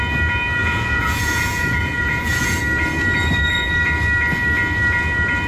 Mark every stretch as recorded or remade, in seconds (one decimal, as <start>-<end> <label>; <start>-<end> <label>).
0.0-0.6 recorded; 0.6-2.6 remade; 2.6-5.5 recorded